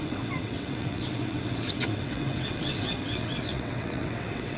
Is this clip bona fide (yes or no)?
no